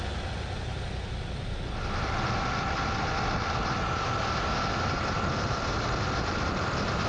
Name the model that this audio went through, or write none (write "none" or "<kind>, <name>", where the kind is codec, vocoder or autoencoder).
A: none